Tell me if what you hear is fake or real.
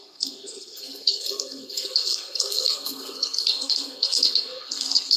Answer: fake